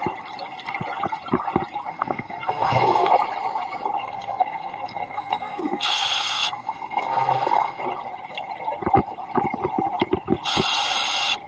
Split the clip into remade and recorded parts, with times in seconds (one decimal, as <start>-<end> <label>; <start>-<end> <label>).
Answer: 0.0-1.9 recorded; 1.9-3.1 remade; 3.1-4.0 recorded; 4.0-7.8 remade; 7.8-11.5 recorded